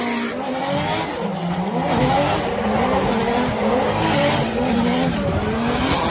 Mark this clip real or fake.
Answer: real